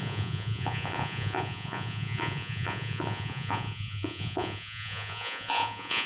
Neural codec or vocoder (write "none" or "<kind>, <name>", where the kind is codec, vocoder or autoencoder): vocoder, Vocos